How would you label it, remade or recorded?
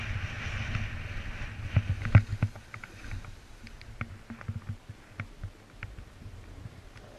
recorded